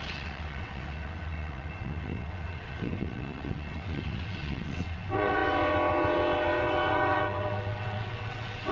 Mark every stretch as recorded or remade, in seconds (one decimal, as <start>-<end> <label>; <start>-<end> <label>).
0.0-8.7 remade